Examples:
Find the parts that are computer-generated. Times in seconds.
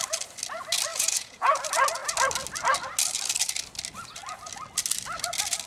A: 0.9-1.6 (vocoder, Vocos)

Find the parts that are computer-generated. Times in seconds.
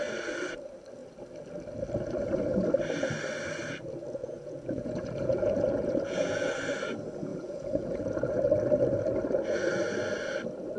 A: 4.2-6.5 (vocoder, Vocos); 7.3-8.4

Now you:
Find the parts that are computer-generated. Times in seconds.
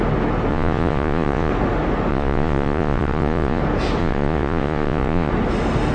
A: 0.5-1.5 (vocoder, Vocos); 2.1-3.6; 4.0-5.3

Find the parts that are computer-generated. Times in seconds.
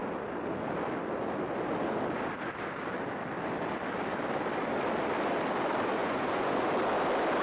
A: 6.0-6.6 (vocoder, Vocos)